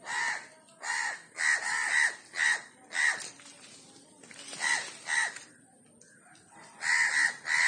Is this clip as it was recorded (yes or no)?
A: yes